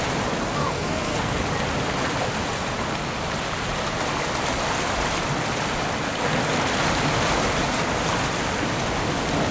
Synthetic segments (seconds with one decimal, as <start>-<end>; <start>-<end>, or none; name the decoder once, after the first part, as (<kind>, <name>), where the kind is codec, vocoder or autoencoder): 0.6-1.4 (codec, SNAC)